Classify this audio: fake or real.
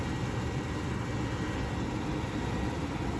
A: real